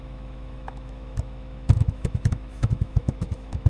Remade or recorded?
remade